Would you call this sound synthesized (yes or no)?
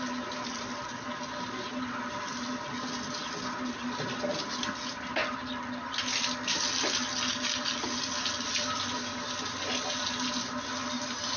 no